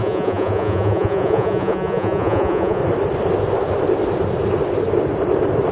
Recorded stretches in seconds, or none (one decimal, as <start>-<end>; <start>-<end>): 2.8-5.7